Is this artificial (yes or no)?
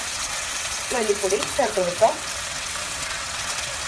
yes